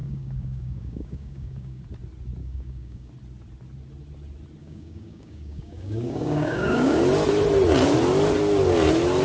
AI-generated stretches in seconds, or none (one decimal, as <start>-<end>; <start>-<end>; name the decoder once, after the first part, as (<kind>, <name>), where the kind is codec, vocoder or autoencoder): 0.0-1.8 (codec, DAC); 2.4-3.1; 4.6-7.0